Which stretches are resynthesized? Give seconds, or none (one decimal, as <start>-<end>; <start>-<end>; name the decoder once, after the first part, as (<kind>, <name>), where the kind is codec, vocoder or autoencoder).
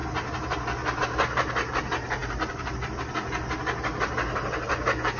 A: none